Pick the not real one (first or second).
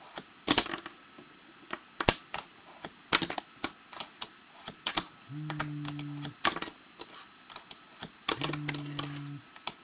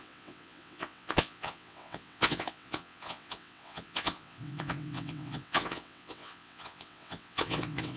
second